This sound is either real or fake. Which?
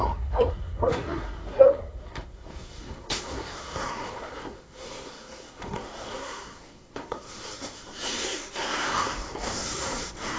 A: fake